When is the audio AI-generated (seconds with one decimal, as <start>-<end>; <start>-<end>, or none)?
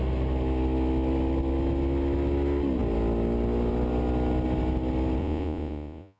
5.2-6.2